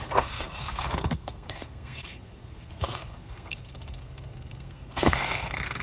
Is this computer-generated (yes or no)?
yes